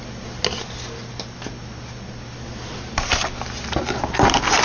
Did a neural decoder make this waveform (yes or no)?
no